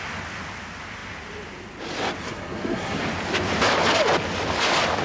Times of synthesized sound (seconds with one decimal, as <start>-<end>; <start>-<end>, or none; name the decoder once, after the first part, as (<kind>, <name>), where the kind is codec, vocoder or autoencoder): 2.2-3.0 (codec, SNAC)